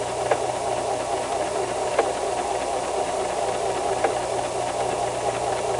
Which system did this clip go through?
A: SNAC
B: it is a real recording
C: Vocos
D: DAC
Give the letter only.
B